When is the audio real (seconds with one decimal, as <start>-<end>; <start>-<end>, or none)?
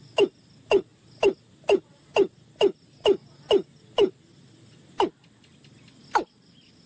0.0-6.9